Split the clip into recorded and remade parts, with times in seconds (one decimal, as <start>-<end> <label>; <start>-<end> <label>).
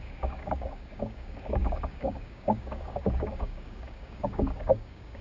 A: 0.0-5.2 remade